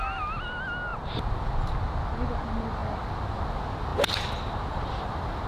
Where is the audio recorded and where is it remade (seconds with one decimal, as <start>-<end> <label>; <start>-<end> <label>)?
0.0-0.9 recorded; 0.9-1.5 remade; 1.5-5.5 recorded